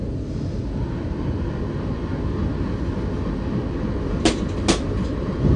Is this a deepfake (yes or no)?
no